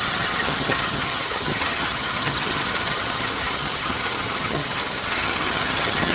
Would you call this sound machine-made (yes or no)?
yes